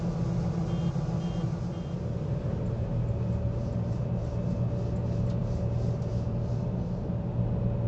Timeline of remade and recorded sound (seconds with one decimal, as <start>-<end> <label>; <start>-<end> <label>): 0.0-7.9 recorded